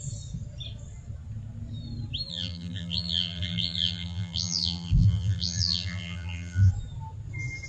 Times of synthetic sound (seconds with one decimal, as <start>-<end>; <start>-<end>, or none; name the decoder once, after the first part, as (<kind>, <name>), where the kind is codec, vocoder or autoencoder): 2.3-6.7 (vocoder, BigVGAN v2)